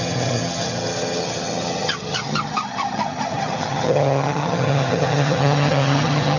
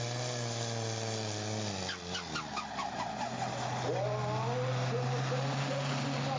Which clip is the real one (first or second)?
second